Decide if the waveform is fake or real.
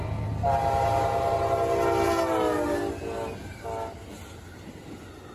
real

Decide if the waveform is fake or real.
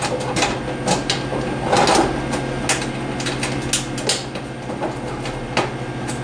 real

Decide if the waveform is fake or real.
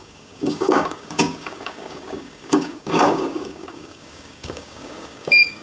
fake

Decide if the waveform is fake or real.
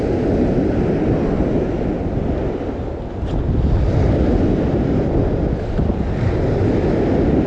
real